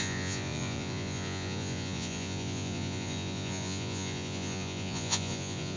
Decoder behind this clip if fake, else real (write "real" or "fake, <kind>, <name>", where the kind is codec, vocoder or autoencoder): fake, vocoder, Vocos